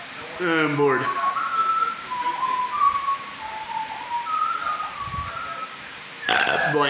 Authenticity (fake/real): real